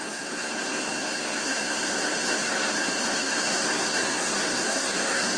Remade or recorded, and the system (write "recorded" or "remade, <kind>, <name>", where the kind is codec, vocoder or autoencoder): remade, codec, SNAC